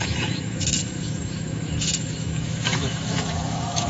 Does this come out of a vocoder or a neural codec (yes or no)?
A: yes